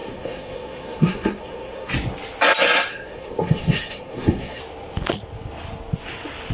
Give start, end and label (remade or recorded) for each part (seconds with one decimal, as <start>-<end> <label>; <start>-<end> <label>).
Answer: 0.0-1.9 remade; 1.9-2.9 recorded; 2.9-4.6 remade; 4.6-6.5 recorded